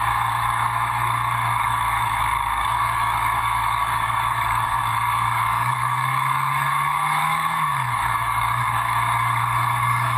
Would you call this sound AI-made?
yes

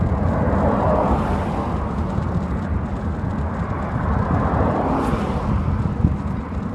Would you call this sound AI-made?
no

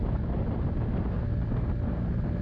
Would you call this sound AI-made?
no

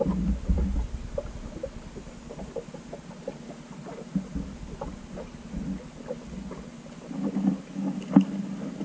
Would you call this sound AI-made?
no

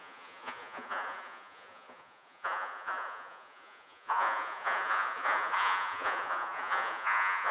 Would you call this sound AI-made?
yes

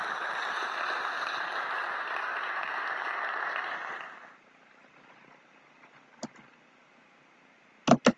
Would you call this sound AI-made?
no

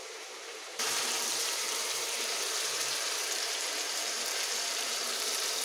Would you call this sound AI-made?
yes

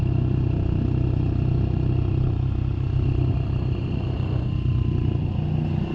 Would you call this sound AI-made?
no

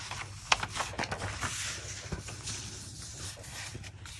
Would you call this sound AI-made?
no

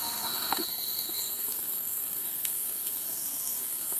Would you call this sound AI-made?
yes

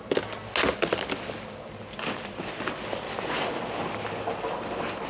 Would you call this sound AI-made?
no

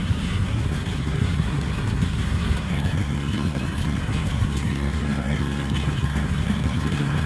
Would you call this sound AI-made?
yes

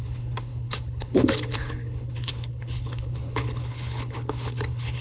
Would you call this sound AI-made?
yes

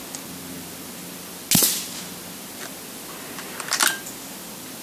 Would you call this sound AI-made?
no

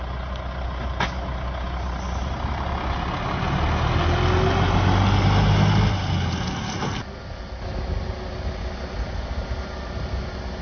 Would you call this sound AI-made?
no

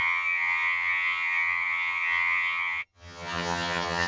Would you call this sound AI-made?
yes